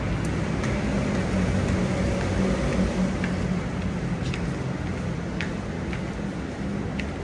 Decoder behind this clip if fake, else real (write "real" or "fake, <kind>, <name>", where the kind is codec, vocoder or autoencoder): real